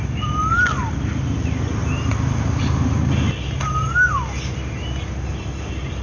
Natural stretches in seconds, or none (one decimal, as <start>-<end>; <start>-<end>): 0.0-1.8; 2.6-5.3